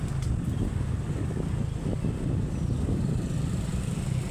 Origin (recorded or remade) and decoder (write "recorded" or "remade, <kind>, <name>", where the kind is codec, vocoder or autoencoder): recorded